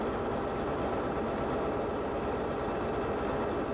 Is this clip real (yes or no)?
yes